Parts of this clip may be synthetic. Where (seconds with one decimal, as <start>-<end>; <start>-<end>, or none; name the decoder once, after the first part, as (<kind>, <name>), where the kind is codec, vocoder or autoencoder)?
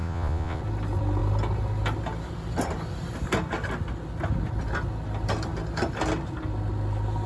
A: 0.0-0.6 (vocoder, Vocos)